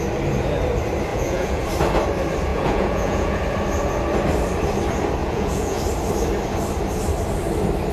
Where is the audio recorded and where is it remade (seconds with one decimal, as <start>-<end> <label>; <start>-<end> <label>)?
0.0-1.1 recorded; 1.1-1.6 remade; 1.6-2.5 recorded; 2.5-3.4 remade; 3.4-5.2 recorded; 5.2-5.8 remade; 5.8-7.9 recorded